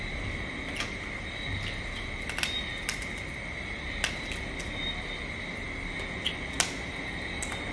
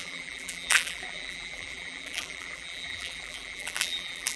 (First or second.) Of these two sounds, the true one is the first